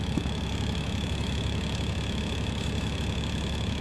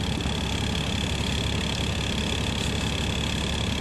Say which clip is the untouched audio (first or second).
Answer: second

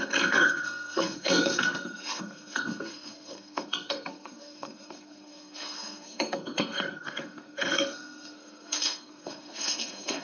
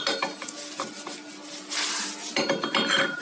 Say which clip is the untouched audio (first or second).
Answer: second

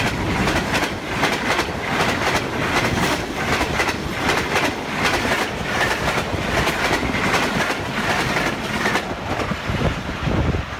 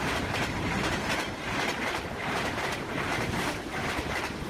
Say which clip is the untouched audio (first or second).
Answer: first